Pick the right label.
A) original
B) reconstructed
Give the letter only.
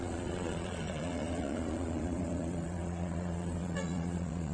B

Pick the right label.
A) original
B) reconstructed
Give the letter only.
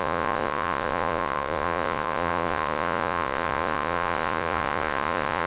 B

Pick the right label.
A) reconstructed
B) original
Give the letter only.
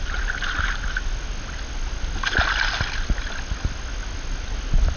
B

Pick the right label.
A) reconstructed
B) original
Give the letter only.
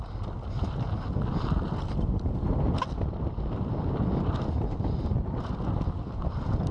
B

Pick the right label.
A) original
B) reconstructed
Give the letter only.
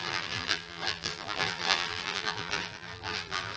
B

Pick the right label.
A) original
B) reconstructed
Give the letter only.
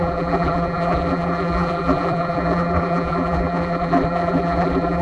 B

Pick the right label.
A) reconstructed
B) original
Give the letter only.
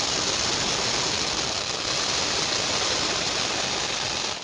B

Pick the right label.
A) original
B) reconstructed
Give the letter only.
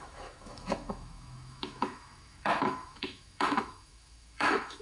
B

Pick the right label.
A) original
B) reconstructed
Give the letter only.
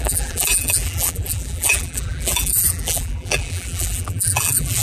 B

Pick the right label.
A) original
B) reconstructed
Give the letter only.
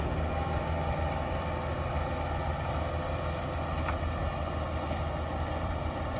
A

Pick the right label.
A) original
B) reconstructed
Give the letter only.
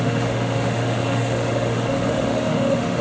B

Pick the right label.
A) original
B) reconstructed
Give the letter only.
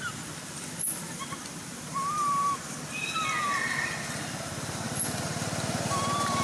A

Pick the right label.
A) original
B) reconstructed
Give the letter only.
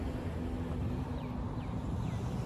A